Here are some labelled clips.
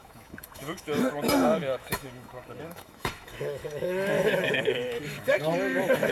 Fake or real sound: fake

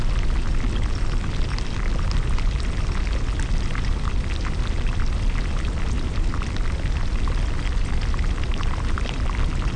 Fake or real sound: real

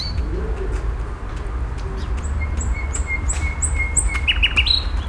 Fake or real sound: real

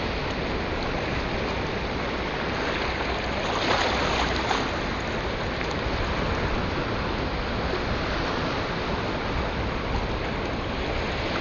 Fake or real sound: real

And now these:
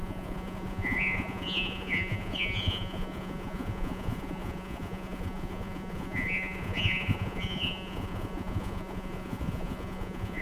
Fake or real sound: fake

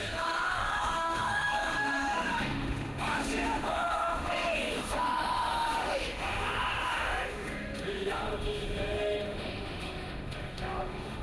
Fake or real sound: fake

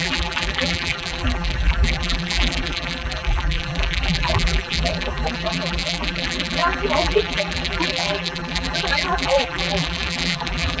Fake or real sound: fake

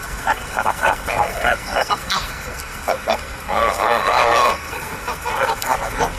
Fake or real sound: fake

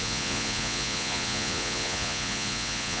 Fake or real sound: fake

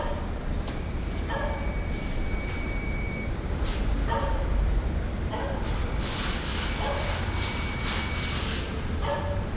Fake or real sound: fake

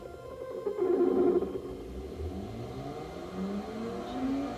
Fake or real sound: real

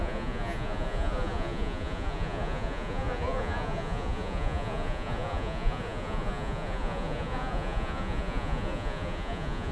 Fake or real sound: fake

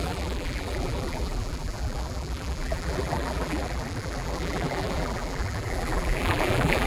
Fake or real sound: fake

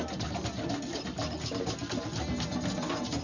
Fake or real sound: real